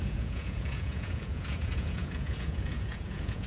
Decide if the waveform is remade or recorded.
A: remade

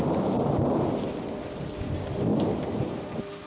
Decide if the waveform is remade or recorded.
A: recorded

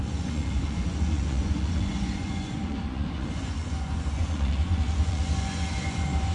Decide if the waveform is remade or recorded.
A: remade